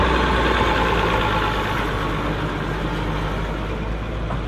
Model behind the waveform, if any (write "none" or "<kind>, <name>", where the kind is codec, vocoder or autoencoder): none